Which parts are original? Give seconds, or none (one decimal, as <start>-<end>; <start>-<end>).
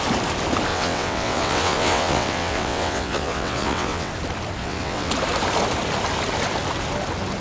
0.0-0.7; 4.1-4.6; 5.1-7.4